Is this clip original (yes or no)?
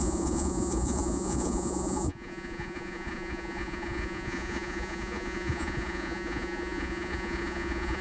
no